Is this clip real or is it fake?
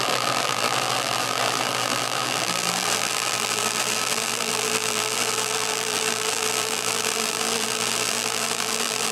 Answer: fake